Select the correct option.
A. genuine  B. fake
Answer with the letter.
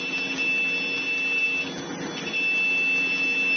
A